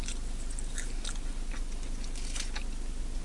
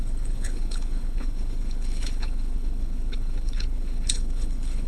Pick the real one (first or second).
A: first